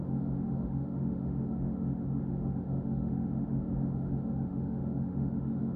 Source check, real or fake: fake